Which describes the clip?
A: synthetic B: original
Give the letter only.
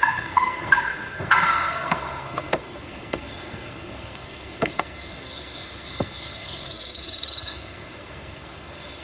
A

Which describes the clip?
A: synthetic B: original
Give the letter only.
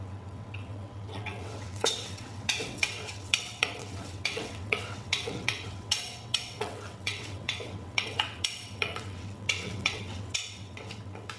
A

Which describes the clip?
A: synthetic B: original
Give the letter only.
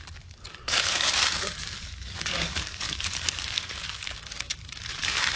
A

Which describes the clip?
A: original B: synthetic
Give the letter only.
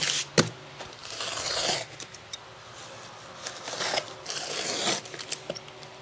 A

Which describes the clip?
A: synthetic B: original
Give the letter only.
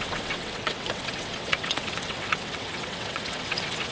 A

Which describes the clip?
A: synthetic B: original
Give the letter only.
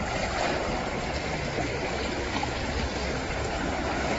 B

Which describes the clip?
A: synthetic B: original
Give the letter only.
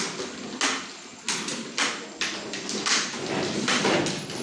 B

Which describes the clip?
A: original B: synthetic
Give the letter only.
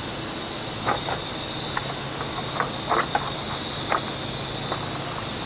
A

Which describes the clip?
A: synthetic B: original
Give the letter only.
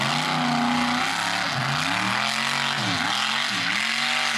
B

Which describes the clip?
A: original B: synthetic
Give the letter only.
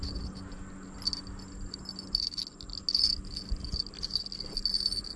A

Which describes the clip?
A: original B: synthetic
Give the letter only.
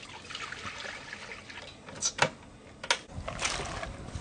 A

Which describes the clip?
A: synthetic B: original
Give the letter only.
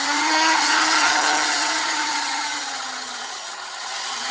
A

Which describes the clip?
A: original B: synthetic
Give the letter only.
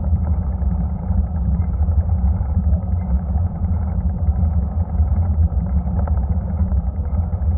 B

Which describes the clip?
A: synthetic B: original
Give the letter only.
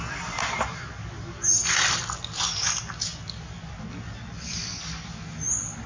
B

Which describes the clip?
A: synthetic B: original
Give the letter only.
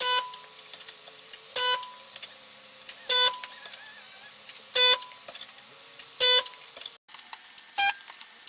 B